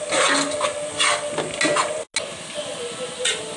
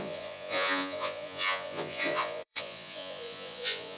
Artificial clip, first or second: second